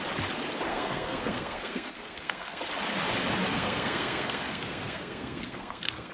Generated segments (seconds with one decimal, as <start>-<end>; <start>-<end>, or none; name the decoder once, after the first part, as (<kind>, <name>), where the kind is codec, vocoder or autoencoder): 0.7-2.6 (codec, SNAC); 3.5-6.1